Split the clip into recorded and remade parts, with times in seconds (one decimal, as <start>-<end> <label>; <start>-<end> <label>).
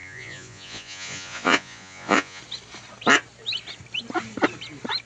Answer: 0.0-2.4 remade; 2.4-5.1 recorded